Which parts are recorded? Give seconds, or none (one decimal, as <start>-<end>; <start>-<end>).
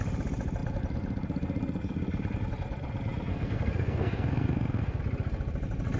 0.0-3.3; 5.0-6.0